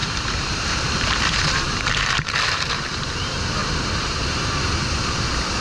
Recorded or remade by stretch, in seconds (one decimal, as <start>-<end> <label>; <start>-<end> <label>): 0.0-3.6 remade; 3.6-5.6 recorded